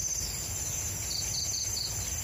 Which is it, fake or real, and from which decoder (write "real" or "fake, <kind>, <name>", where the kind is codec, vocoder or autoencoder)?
real